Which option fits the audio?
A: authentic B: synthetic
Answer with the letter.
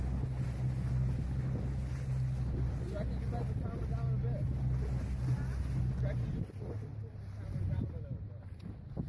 A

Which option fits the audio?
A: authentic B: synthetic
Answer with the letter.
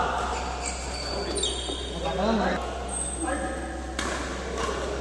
A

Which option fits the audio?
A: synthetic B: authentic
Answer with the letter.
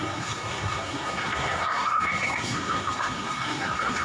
A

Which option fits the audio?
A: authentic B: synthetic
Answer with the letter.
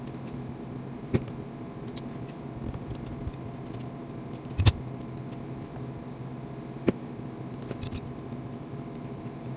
A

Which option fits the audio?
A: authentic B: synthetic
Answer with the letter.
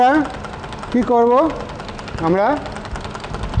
A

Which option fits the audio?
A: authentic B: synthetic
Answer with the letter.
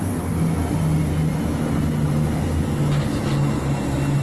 A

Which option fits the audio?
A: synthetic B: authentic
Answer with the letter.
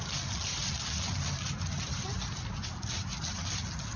B